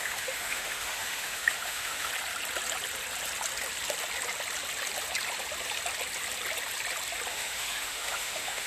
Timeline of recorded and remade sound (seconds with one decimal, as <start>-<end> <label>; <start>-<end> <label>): 0.0-2.1 remade; 2.1-7.3 recorded; 7.3-8.7 remade